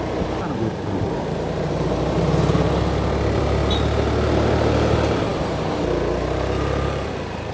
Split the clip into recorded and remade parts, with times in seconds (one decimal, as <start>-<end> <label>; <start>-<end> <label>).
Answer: 0.0-7.5 recorded